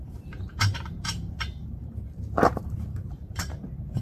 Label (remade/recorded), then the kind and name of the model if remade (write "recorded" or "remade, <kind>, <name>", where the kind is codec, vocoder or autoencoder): remade, vocoder, BigVGAN v2